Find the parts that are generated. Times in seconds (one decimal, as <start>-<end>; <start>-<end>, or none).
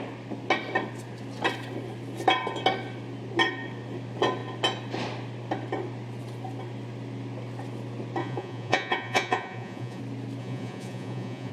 8.2-10.0; 10.4-11.5